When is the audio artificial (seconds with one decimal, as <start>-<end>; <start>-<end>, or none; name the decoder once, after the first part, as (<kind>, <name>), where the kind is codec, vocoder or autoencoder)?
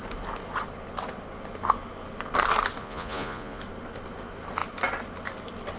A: 2.8-3.6 (vocoder, Vocos)